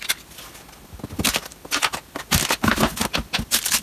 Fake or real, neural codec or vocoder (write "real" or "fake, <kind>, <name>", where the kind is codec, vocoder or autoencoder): real